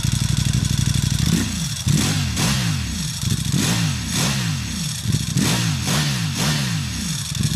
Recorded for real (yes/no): yes